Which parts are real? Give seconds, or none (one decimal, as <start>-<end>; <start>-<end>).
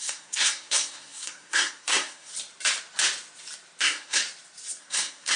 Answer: 2.3-3.8; 4.2-4.8